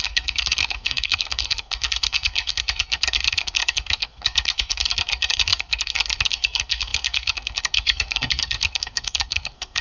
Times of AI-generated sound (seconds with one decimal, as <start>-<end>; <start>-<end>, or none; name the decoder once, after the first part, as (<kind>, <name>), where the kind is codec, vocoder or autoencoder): 0.0-9.8 (codec, SNAC)